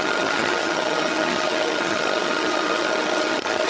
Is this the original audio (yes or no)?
no